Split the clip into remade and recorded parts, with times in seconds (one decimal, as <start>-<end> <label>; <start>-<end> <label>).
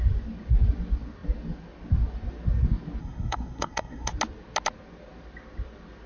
0.0-3.0 recorded; 3.0-4.1 remade; 4.1-6.1 recorded